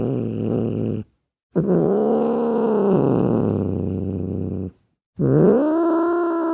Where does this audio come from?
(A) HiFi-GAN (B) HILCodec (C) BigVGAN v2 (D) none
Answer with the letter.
D